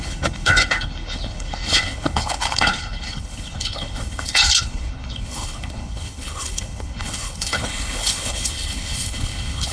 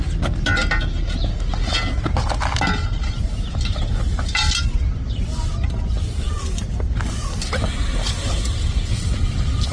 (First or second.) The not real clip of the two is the first